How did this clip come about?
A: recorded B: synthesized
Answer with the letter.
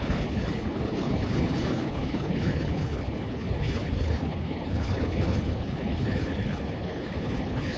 B